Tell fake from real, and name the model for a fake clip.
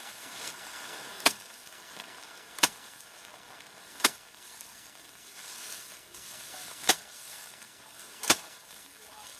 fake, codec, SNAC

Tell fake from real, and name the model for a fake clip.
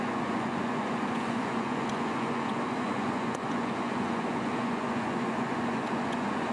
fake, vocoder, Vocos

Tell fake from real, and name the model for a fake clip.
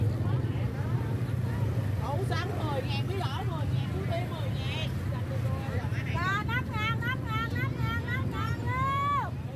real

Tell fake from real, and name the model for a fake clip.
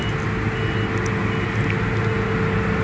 real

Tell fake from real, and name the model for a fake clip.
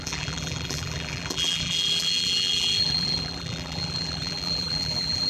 fake, vocoder, BigVGAN v2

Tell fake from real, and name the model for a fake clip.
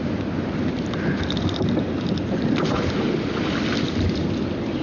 real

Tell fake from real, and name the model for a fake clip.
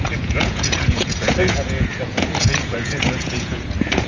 fake, vocoder, Vocos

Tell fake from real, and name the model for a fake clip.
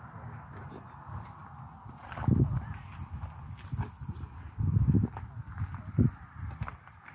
real